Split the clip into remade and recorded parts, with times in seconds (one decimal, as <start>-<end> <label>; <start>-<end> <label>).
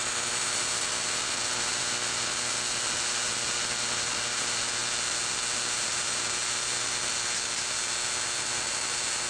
0.0-9.3 recorded